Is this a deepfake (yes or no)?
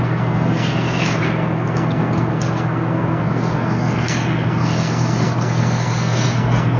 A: yes